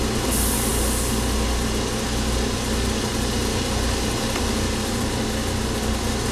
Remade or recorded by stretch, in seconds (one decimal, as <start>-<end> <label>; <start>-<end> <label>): 0.0-6.3 recorded

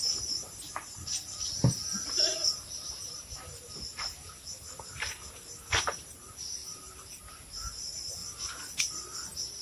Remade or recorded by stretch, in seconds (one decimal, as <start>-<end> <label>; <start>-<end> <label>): 0.0-2.4 recorded; 2.4-5.1 remade; 5.1-6.6 recorded; 6.6-7.3 remade; 7.3-9.6 recorded

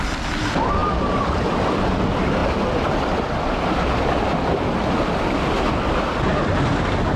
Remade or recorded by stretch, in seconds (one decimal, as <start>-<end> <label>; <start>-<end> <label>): 0.0-7.2 recorded

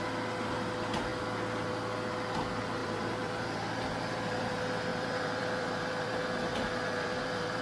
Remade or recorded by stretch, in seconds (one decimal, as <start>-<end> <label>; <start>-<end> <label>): 0.0-2.8 recorded; 2.8-4.5 remade; 4.5-4.9 recorded; 4.9-6.1 remade; 6.1-6.5 recorded; 6.5-7.6 remade